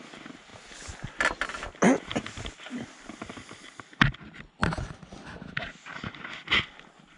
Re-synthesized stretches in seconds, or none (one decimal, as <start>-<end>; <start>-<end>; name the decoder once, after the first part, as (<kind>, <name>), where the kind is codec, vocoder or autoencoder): none